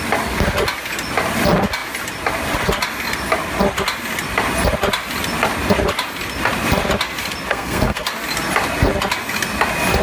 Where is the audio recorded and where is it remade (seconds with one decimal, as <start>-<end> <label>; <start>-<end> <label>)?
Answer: 0.0-7.5 recorded; 7.5-8.1 remade; 8.1-10.0 recorded